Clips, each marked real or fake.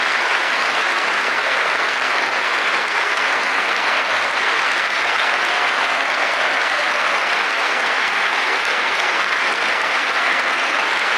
fake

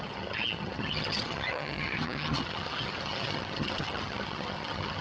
fake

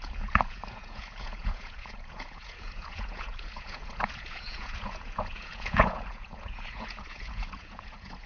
fake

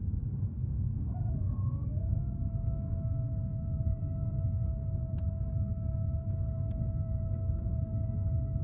fake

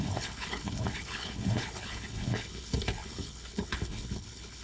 fake